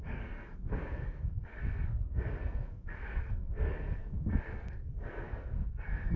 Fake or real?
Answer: fake